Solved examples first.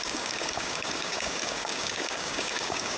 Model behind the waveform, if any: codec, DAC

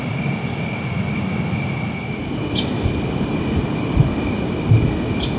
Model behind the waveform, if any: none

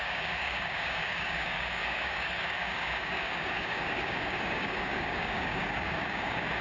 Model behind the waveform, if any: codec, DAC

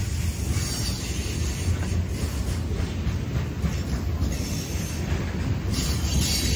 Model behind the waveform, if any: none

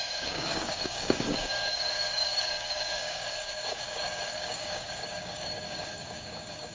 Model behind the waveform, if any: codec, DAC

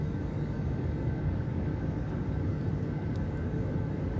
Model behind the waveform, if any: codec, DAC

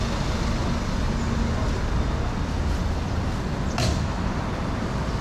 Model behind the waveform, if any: none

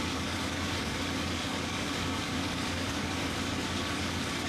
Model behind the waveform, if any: codec, DAC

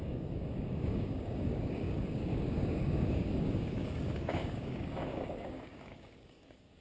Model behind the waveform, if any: codec, DAC